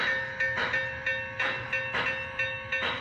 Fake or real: real